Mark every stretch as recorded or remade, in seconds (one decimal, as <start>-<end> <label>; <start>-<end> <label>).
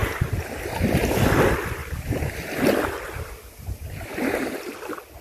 0.0-1.8 recorded; 1.8-4.6 remade; 4.6-5.2 recorded